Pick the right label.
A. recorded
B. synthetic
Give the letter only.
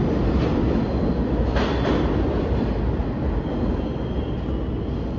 A